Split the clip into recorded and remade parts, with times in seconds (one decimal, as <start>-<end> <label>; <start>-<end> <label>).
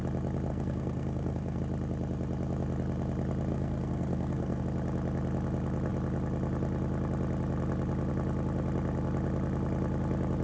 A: 0.0-0.5 recorded; 0.5-1.6 remade; 1.6-3.5 recorded; 3.5-4.6 remade; 4.6-10.4 recorded